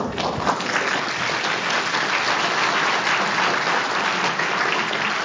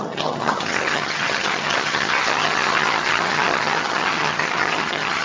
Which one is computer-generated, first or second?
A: second